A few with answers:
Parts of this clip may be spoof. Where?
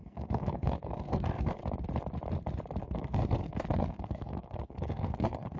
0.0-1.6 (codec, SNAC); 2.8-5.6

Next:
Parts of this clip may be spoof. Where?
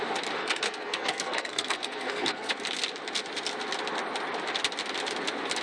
0.4-2.5 (codec, SNAC)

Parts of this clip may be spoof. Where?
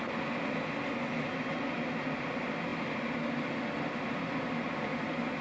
none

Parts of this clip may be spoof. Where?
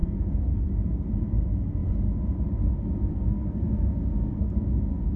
0.0-0.7 (codec, SNAC); 3.1-5.2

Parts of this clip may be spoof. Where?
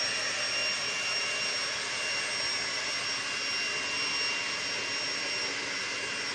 none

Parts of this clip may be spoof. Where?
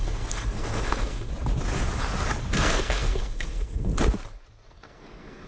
0.0-1.3 (codec, SNAC); 2.5-3.9; 4.7-5.5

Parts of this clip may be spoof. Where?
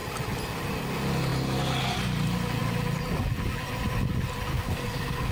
4.5-5.3 (codec, SNAC)